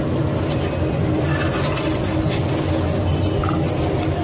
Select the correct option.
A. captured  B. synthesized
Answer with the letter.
A